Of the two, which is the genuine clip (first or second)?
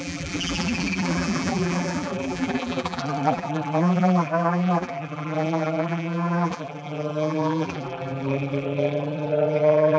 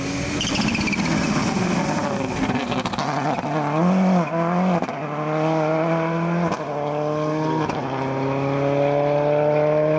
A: second